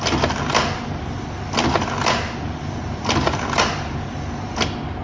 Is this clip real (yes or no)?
yes